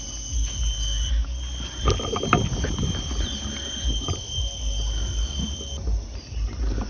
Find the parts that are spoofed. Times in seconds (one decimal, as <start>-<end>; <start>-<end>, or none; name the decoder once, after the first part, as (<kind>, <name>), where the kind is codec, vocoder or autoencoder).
none